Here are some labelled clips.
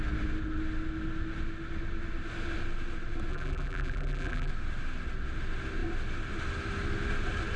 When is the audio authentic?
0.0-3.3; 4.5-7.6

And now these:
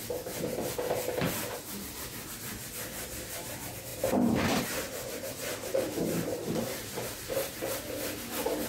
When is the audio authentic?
0.0-3.9; 4.6-6.4; 7.5-8.7